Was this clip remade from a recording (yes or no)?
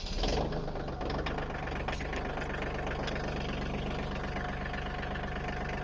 no